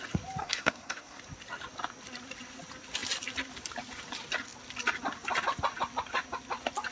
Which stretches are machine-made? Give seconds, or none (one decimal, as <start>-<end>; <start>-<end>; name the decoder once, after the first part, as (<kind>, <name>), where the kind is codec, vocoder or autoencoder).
0.4-1.2 (codec, SNAC)